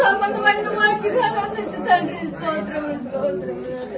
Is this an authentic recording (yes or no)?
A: yes